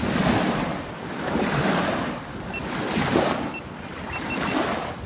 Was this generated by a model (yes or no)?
no